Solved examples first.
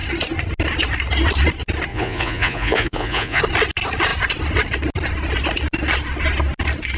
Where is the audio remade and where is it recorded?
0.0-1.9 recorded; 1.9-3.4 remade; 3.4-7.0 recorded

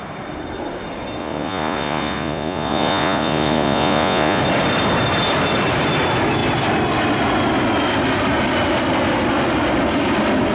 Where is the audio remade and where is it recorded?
0.0-1.2 recorded; 1.2-4.4 remade; 4.4-10.5 recorded

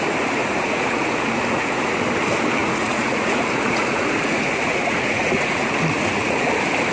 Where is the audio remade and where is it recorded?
0.0-0.4 recorded; 0.4-1.8 remade; 1.8-2.6 recorded; 2.6-6.5 remade; 6.5-6.9 recorded